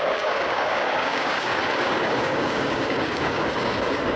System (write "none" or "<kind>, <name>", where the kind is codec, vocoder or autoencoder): codec, DAC